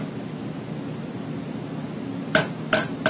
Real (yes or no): yes